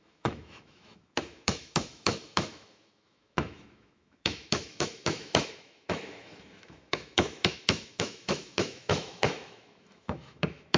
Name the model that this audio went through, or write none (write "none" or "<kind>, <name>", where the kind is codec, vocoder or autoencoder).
autoencoder, DAC-VAE